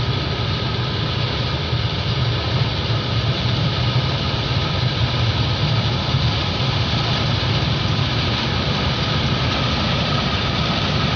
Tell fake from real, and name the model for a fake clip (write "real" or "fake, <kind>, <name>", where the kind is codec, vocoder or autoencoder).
fake, vocoder, BigVGAN v2